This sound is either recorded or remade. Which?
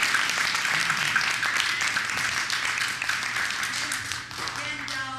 recorded